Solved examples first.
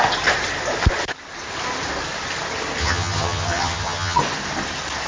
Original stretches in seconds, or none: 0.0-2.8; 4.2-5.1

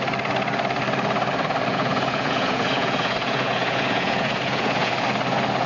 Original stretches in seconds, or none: 0.0-1.7; 4.9-5.7

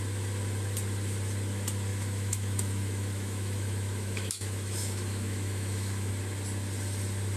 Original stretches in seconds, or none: 0.0-1.9; 6.1-7.4

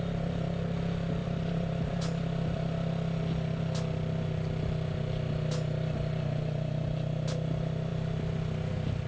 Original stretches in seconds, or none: 0.0-1.2; 2.7-9.1

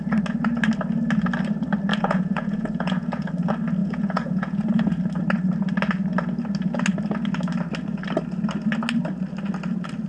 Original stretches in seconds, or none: 0.0-1.9; 3.3-3.8; 5.0-10.1

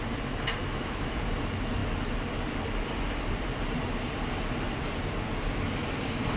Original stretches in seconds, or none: 0.0-0.6; 1.2-6.4

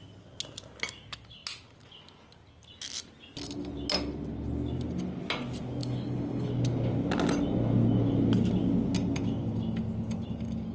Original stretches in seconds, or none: 0.0-5.8; 6.5-10.7

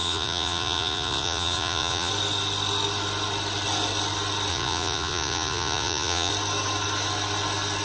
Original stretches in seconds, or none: 2.1-4.5; 6.3-7.8